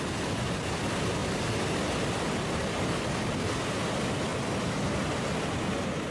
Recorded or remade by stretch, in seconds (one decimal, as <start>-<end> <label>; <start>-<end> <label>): 0.0-6.1 recorded